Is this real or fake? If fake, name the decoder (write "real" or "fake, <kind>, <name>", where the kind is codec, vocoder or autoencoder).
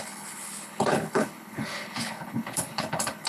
fake, codec, HILCodec